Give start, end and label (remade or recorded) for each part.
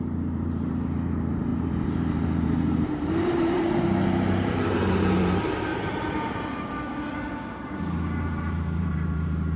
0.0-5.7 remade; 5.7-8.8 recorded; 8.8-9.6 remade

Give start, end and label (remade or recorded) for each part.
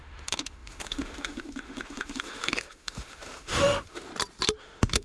0.0-4.1 remade; 4.1-4.6 recorded; 4.6-5.0 remade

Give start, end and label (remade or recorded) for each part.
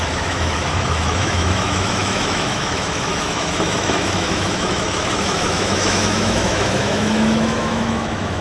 0.0-8.4 remade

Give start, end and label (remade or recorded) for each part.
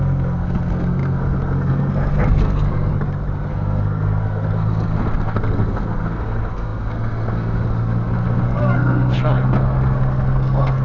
0.0-2.9 remade; 2.9-3.5 recorded; 3.5-10.8 remade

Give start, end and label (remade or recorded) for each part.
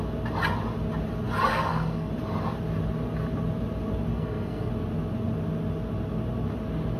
0.0-1.5 recorded; 1.5-2.1 remade; 2.1-4.1 recorded; 4.1-4.7 remade; 4.7-7.0 recorded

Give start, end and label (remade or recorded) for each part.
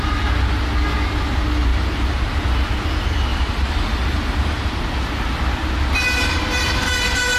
0.0-1.7 recorded; 1.7-2.4 remade; 2.4-3.3 recorded; 3.3-4.8 remade; 4.8-7.4 recorded